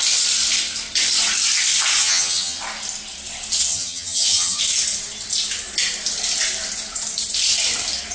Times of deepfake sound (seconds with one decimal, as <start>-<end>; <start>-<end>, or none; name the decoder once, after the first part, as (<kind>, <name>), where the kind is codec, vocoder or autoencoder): 2.0-2.6 (vocoder, HiFi-GAN); 3.7-4.6